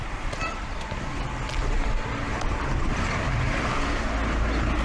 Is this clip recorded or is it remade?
recorded